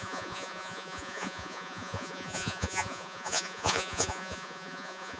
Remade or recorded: remade